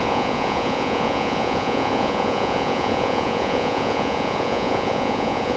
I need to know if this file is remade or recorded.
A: remade